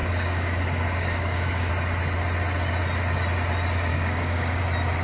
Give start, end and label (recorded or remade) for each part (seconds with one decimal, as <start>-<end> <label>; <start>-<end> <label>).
0.0-1.7 remade; 1.7-3.9 recorded; 3.9-4.6 remade; 4.6-5.0 recorded